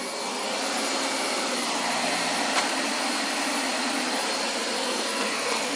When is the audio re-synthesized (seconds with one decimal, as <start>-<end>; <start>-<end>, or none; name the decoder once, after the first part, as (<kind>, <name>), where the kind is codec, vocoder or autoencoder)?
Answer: 4.8-5.8 (codec, SNAC)